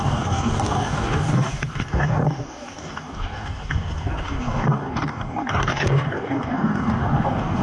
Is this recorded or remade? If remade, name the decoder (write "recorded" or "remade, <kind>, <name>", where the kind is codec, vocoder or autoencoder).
remade, codec, DAC